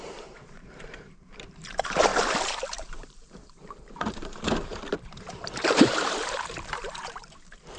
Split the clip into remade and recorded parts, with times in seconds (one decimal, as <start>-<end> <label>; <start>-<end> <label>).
0.0-7.8 remade